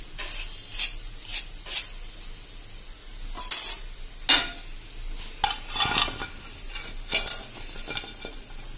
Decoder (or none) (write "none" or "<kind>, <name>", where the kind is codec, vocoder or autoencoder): none